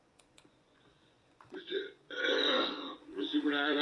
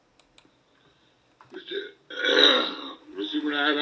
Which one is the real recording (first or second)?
second